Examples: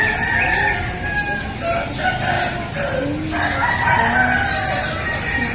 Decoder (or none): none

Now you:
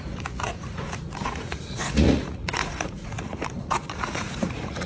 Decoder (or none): vocoder, Vocos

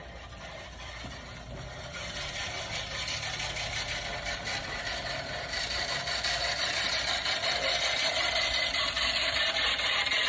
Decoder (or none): none